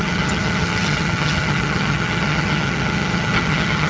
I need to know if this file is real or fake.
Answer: fake